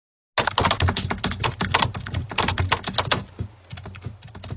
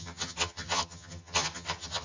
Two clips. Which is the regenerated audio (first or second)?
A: second